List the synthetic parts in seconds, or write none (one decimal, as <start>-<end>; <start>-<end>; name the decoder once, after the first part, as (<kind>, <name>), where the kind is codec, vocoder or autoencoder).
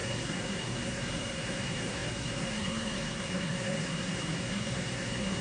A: 0.0-5.4 (codec, SNAC)